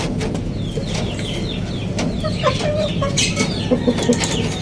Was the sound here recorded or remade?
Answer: recorded